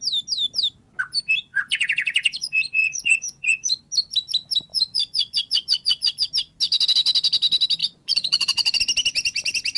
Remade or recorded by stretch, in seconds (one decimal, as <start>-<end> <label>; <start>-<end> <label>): 0.0-1.5 recorded; 1.5-3.8 remade; 3.8-4.7 recorded; 4.7-6.3 remade; 6.3-7.8 recorded; 7.8-8.8 remade; 8.8-9.8 recorded